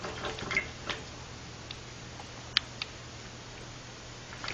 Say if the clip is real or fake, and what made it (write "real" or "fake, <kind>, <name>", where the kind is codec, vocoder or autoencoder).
real